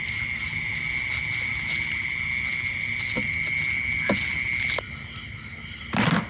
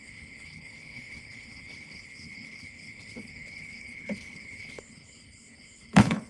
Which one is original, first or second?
first